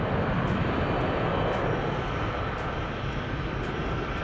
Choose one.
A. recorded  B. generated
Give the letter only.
A